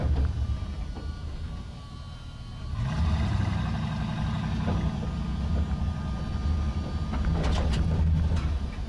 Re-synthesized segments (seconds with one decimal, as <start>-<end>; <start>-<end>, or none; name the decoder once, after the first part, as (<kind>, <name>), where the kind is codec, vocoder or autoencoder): 0.0-3.3 (vocoder, BigVGAN v2); 8.3-8.9